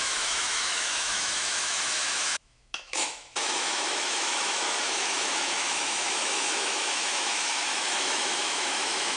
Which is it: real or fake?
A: fake